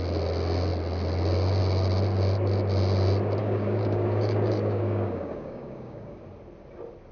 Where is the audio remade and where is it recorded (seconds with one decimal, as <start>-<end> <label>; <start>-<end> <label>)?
0.0-3.4 recorded; 3.4-6.2 remade; 6.2-7.1 recorded